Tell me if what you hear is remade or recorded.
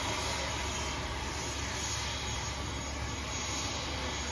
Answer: recorded